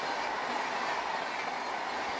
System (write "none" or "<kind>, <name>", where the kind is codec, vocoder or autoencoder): none